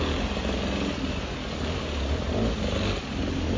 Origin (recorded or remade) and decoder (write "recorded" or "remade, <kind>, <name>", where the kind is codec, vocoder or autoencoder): recorded